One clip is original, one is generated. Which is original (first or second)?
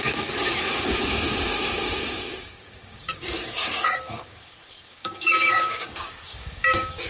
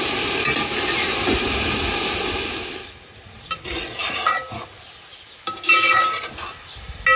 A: second